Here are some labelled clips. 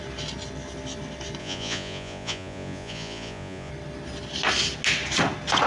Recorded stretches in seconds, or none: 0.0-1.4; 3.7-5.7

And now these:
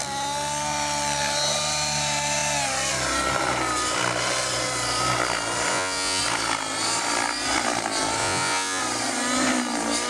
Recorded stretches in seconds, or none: 0.0-5.7; 6.2-8.2; 8.8-10.1

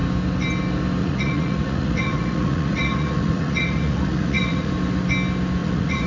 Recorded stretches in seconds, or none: 0.0-1.0; 4.7-5.6

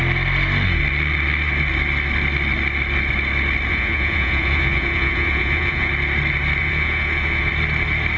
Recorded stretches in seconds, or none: 0.0-3.7; 5.9-6.6; 7.5-8.2

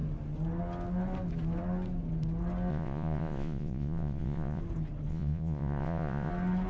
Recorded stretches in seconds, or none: 0.0-2.7; 4.6-5.1; 6.3-6.7

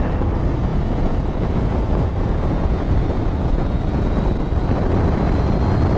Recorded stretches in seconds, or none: 0.0-0.7; 4.3-6.0

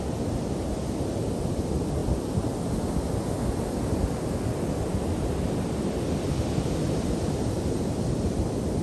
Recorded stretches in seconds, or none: 0.0-8.8

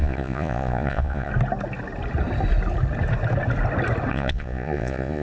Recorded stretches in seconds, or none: 1.3-4.1